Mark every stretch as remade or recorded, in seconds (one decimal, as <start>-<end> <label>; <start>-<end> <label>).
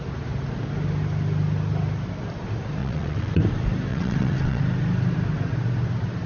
0.0-2.8 recorded; 2.8-3.4 remade; 3.4-3.9 recorded; 3.9-4.6 remade; 4.6-6.3 recorded